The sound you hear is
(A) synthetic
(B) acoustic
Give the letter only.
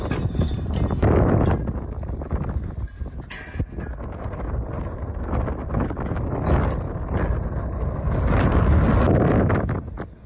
B